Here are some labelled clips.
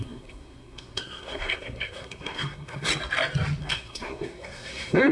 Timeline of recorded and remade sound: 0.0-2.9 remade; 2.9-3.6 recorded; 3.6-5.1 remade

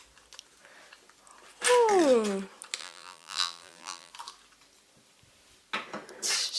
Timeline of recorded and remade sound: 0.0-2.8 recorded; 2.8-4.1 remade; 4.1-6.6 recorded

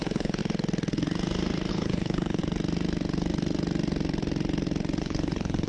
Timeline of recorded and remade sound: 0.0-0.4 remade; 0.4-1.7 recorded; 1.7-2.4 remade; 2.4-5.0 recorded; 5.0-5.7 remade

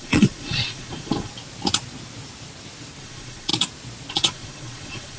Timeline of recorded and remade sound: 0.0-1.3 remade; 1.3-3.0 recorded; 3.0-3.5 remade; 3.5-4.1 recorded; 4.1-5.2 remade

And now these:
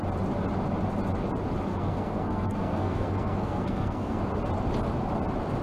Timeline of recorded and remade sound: 0.0-1.7 recorded; 1.7-4.2 remade; 4.2-5.6 recorded

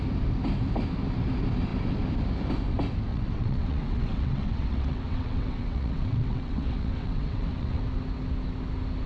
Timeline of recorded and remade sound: 0.0-3.1 recorded; 3.1-7.8 remade; 7.8-9.1 recorded